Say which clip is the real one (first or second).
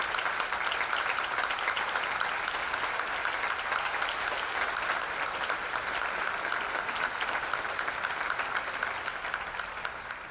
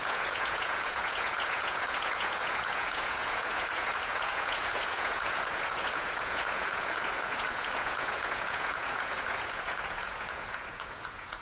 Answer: first